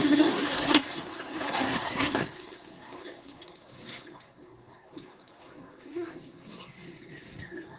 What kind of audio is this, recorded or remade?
remade